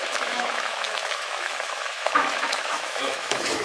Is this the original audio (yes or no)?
no